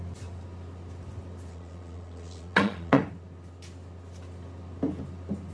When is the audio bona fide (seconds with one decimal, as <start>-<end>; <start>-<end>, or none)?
0.0-1.5; 3.0-5.5